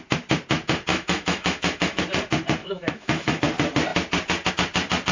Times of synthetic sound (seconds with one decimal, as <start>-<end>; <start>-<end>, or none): 0.9-2.0; 2.6-3.4